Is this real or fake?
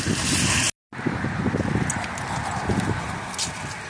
real